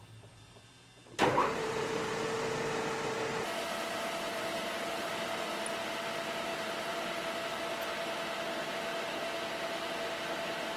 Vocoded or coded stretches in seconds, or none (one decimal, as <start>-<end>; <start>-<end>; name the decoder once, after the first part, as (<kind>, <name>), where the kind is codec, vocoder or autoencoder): 1.3-2.1 (vocoder, BigVGAN v2); 4.3-5.1; 6.5-7.4